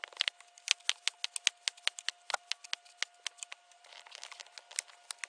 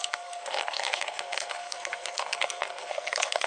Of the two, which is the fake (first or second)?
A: second